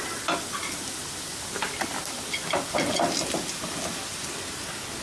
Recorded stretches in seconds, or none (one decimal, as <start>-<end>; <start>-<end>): 0.0-5.0